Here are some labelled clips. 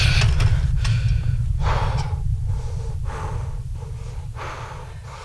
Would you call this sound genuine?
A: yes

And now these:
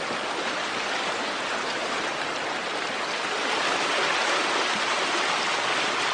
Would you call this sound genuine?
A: yes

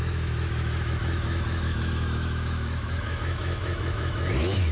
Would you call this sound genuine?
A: no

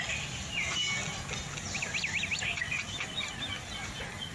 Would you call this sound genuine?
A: yes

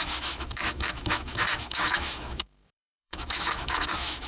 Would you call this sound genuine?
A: no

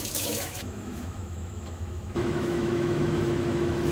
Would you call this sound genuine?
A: no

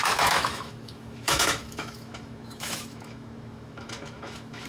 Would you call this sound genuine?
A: no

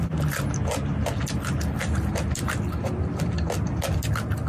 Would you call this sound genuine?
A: yes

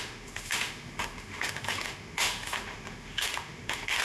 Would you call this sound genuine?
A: no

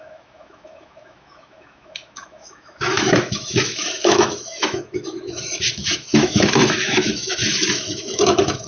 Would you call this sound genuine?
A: no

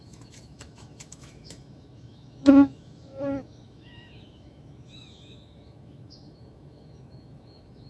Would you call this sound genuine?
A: no